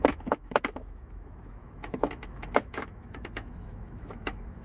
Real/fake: fake